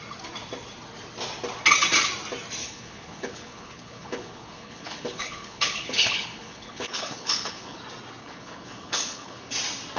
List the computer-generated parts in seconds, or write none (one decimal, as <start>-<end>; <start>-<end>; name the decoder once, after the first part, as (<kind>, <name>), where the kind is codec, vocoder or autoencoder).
2.6-7.8 (codec, HILCodec); 8.2-9.5